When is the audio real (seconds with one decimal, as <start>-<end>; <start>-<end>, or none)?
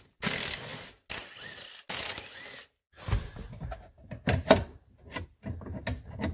0.0-6.3